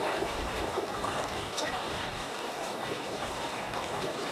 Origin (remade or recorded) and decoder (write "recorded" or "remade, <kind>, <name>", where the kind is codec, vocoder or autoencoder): remade, codec, DAC